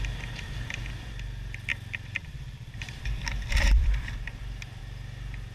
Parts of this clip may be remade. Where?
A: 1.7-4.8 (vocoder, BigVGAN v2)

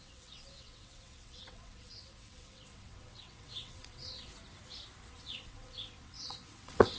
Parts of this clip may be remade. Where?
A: 0.0-4.3 (vocoder, WaveNeXt); 5.1-7.0

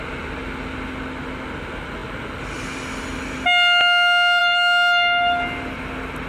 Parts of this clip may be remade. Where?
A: none

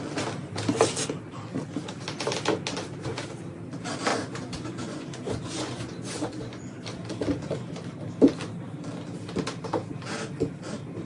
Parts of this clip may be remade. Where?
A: 4.1-6.7 (vocoder, Vocos)